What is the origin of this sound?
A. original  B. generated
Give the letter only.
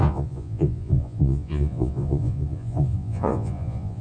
B